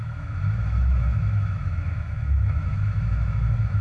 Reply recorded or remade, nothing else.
remade